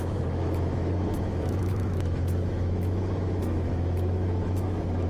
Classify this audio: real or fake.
fake